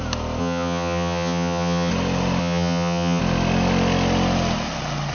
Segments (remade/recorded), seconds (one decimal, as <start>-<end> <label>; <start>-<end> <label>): 0.0-0.4 recorded; 0.4-1.9 remade; 1.9-2.4 recorded; 2.4-3.2 remade; 3.2-5.1 recorded